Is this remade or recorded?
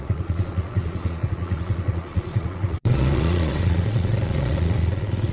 remade